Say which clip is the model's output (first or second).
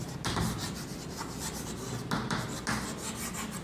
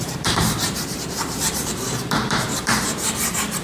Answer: second